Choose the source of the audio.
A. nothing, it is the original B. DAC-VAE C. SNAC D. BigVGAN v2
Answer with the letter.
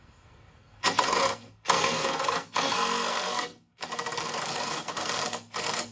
C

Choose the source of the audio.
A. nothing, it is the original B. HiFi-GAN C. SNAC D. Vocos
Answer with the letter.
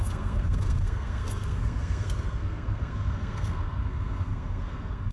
C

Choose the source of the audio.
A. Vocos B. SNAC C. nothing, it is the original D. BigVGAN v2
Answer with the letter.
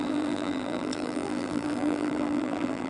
D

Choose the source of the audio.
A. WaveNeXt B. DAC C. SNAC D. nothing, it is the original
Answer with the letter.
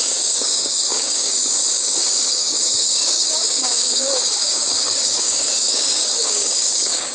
B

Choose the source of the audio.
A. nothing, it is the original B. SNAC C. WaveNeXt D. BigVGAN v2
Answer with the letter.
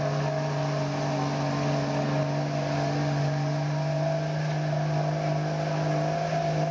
A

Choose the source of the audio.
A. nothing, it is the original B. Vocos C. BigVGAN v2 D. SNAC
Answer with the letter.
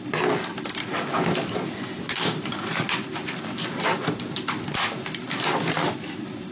A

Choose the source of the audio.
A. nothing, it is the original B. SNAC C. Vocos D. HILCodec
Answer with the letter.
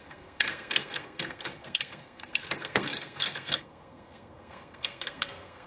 B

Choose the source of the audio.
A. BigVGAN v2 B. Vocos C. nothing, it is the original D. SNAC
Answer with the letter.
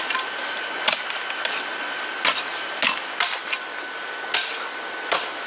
C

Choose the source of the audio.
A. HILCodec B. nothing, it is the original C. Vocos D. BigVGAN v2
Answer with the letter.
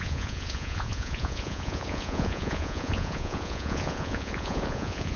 C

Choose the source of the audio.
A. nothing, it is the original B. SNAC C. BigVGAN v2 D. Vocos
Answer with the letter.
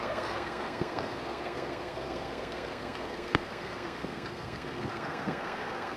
B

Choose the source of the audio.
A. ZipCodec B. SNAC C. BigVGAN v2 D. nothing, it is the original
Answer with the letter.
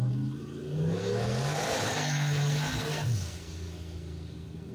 B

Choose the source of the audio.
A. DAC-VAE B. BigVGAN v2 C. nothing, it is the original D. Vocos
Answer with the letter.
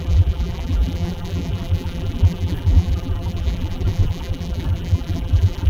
B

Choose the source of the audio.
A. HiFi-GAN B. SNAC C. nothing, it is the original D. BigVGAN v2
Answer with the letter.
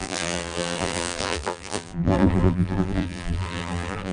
D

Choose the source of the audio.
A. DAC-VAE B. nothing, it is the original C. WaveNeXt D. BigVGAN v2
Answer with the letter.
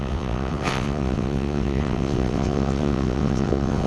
C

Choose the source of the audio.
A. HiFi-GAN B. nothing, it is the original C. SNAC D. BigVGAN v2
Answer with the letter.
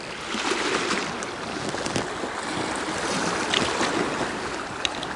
B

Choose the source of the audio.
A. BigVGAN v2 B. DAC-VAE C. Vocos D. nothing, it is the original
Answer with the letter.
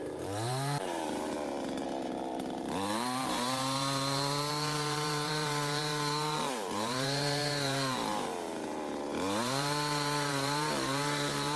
A